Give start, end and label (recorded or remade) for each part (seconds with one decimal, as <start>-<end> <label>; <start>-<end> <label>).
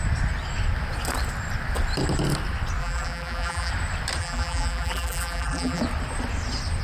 0.0-2.8 recorded; 2.8-3.7 remade; 3.7-4.2 recorded; 4.2-5.8 remade; 5.8-6.8 recorded